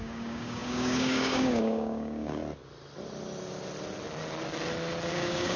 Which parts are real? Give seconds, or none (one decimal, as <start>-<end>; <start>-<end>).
2.4-5.1